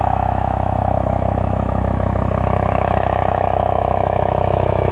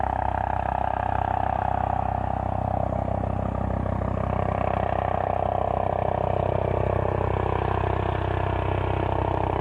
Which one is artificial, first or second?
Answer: first